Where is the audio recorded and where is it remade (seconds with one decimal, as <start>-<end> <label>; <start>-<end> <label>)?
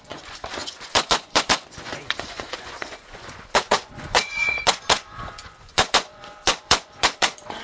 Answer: 0.0-7.6 remade